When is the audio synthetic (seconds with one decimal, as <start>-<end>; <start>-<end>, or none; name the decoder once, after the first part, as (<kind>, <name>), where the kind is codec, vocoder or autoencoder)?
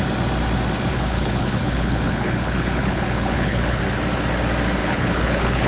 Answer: 0.9-3.8 (codec, HILCodec); 4.8-5.7